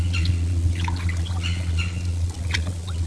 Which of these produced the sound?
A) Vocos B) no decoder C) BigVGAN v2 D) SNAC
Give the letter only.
A